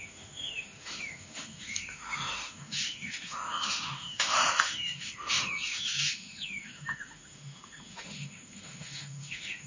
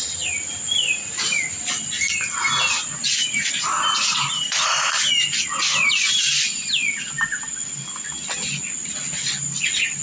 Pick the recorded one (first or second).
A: second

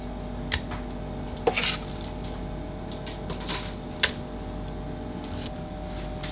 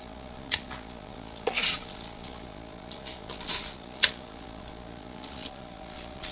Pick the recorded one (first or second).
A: first